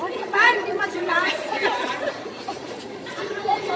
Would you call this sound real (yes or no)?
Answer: no